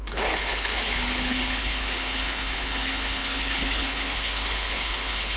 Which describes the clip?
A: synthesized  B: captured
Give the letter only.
A